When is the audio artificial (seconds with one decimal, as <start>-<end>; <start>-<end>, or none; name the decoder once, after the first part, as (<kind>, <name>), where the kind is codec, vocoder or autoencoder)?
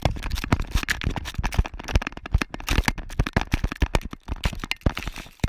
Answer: none